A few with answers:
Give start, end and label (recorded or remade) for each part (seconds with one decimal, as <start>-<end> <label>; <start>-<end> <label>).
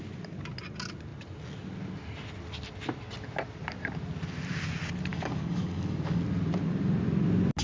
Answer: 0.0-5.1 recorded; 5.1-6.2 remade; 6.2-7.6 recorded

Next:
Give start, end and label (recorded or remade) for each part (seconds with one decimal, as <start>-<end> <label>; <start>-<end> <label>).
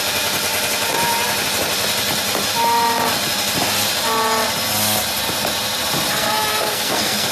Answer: 0.0-6.1 recorded; 6.1-7.3 remade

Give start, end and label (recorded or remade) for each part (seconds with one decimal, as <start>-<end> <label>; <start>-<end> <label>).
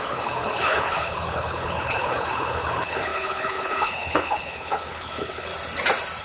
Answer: 0.0-5.5 remade; 5.5-6.2 recorded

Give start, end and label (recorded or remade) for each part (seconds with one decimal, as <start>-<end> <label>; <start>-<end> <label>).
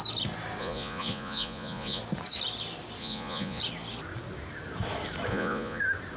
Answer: 0.0-0.6 recorded; 0.6-2.0 remade; 2.0-3.0 recorded; 3.0-3.6 remade; 3.6-5.3 recorded; 5.3-5.8 remade; 5.8-6.2 recorded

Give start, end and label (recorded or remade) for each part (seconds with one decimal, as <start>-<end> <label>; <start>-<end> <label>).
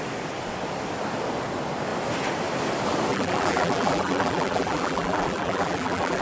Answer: 0.0-3.1 recorded; 3.1-6.2 remade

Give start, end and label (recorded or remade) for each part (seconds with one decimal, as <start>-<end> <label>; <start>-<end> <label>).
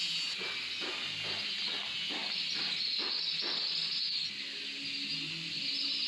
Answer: 0.0-6.1 recorded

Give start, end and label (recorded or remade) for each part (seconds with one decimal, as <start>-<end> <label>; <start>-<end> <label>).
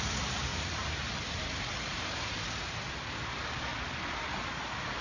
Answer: 0.0-0.5 recorded; 0.5-1.4 remade; 1.4-1.9 recorded; 1.9-2.4 remade; 2.4-5.0 recorded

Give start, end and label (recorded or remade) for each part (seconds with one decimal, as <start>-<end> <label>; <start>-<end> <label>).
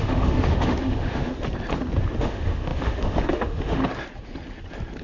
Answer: 0.0-1.3 remade; 1.3-2.2 recorded; 2.2-3.8 remade; 3.8-5.0 recorded